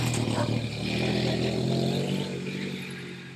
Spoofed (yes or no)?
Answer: no